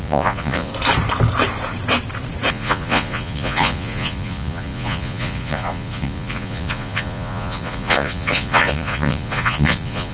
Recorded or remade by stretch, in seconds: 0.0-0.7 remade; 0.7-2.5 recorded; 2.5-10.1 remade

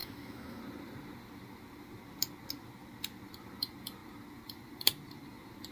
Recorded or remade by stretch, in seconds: 0.0-0.6 remade; 0.6-5.7 recorded